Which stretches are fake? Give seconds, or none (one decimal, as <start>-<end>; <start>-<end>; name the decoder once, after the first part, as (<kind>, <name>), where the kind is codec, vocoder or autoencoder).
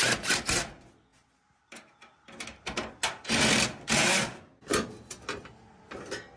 none